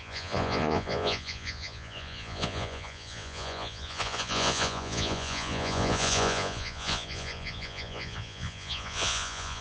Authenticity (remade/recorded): remade